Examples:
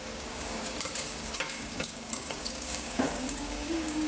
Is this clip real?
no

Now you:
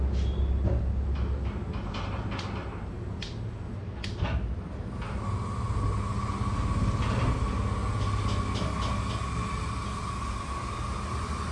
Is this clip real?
yes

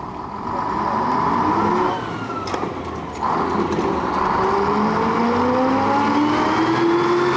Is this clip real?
yes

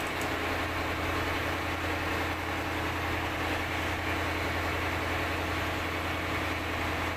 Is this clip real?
yes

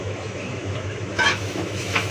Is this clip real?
no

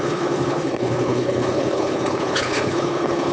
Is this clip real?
no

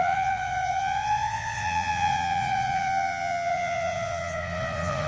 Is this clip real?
no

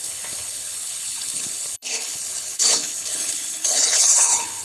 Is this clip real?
no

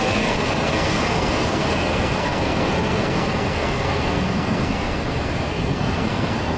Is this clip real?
no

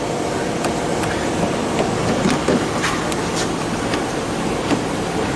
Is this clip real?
yes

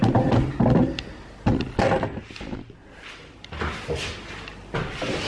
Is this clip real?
yes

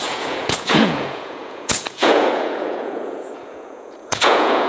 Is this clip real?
no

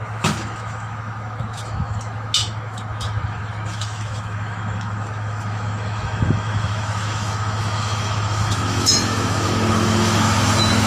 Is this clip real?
no